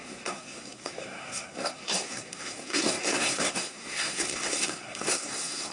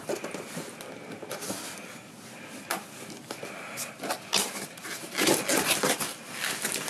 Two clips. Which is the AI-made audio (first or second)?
first